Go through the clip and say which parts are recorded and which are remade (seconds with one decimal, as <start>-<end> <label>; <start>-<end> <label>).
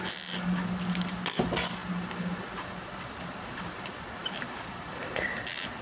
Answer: 0.0-5.8 remade